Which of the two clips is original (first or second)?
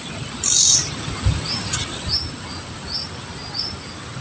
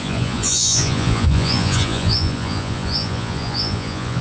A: first